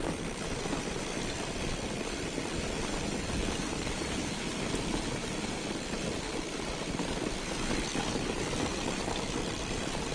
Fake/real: fake